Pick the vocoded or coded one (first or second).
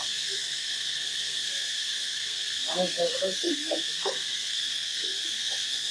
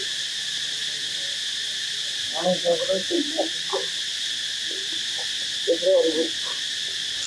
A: first